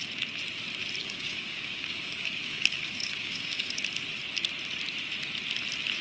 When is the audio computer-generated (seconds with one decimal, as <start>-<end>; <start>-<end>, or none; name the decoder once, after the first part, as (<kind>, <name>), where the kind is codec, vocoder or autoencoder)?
1.0-3.8 (codec, DAC)